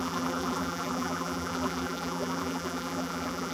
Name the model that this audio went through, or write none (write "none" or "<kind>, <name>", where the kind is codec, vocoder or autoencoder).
vocoder, BigVGAN v2